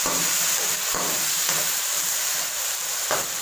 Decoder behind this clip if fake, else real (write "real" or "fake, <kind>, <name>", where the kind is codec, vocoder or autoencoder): fake, vocoder, BigVGAN v2